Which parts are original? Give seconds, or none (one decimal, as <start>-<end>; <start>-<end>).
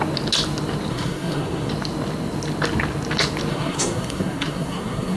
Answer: 0.0-0.9; 1.7-3.5